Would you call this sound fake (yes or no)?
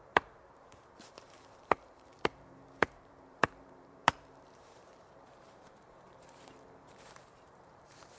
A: yes